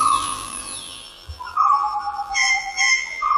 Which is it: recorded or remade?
remade